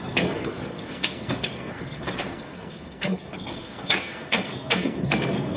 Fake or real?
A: fake